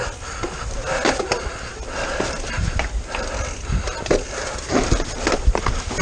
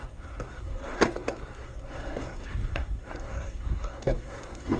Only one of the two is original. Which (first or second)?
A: first